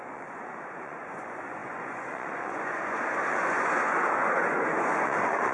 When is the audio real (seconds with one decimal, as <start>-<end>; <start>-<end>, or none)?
none